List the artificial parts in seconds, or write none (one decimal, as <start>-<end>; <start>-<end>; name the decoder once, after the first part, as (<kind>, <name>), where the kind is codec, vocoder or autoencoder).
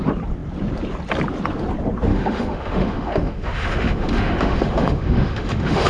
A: 2.1-5.9 (autoencoder, DAC-VAE)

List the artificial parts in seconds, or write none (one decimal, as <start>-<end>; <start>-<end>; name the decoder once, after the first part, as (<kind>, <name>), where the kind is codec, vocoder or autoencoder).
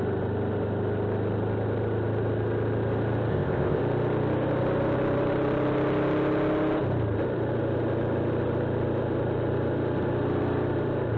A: 3.3-3.8 (codec, ZipCodec)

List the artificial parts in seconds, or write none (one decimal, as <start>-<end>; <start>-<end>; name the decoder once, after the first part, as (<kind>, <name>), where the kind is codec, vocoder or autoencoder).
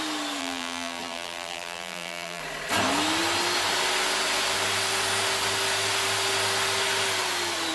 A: 0.4-2.4 (vocoder, BigVGAN v2)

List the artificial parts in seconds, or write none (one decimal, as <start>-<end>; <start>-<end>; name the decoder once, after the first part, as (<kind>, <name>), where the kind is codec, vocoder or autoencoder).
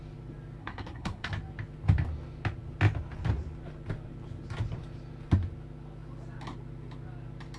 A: 0.6-1.3 (codec, SNAC)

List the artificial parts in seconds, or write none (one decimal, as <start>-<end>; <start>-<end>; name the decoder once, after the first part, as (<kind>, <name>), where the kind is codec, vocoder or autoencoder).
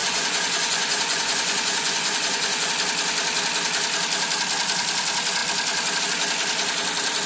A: 0.0-2.7 (vocoder, Vocos)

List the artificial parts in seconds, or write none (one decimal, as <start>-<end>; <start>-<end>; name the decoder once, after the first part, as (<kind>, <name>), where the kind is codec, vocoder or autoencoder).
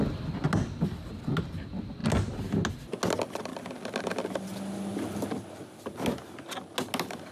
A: none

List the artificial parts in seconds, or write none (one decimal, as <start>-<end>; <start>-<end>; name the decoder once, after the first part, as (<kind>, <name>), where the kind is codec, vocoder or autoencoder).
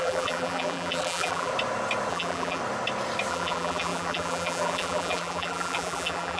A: 0.0-1.5 (vocoder, BigVGAN v2); 2.1-2.6; 3.3-6.4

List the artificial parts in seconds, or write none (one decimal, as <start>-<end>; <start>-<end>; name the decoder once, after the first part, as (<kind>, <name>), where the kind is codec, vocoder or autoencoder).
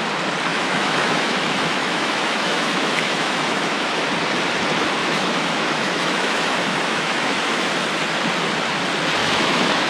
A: 0.5-4.1 (autoencoder, DAC-VAE); 5.0-7.7; 9.2-9.9